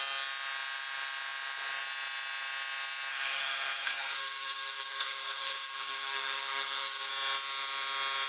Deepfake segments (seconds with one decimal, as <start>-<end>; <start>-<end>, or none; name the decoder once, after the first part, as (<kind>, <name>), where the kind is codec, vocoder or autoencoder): 3.1-7.1 (codec, SNAC)